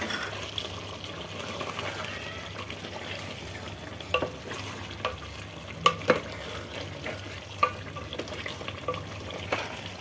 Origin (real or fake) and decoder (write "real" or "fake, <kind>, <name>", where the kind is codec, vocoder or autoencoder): real